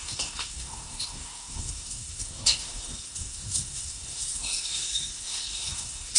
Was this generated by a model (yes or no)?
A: yes